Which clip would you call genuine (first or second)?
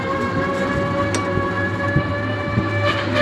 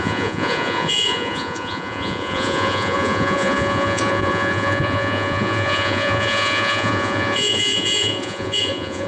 first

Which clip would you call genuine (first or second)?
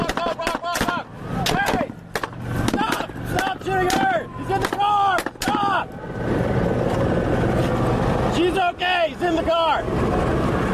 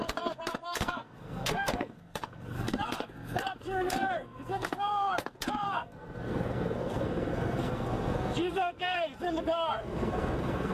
first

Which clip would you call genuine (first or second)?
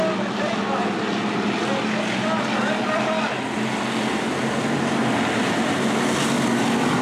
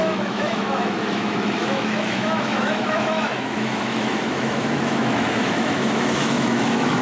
first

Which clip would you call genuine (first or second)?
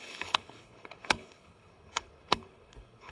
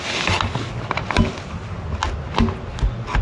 second